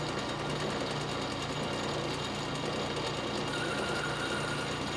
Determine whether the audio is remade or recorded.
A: recorded